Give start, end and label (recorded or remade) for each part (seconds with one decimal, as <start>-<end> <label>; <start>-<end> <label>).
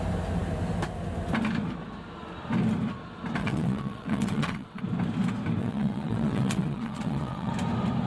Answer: 0.0-3.4 recorded; 3.4-4.8 remade; 4.8-5.6 recorded; 5.6-7.5 remade; 7.5-8.1 recorded